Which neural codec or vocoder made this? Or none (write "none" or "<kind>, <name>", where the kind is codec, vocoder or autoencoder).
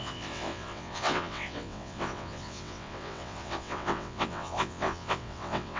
vocoder, WaveNeXt